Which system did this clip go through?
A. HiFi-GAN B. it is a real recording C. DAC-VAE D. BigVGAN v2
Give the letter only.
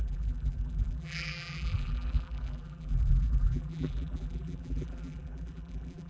D